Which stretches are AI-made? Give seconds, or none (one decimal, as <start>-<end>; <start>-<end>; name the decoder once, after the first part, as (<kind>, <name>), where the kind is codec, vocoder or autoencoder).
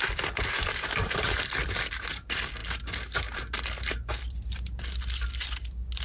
none